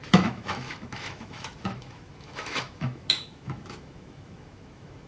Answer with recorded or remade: remade